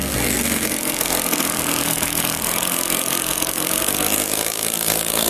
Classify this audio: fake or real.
fake